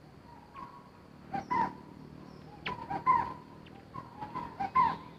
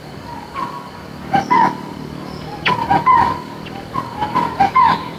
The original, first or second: first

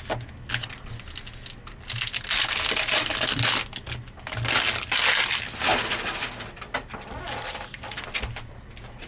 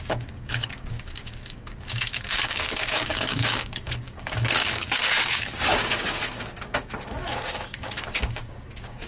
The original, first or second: first